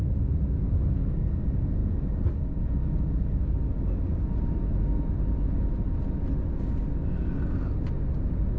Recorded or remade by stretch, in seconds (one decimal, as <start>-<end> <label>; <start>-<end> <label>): 0.0-4.1 recorded; 4.1-5.0 remade; 5.0-8.6 recorded